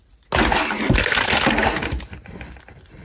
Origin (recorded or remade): recorded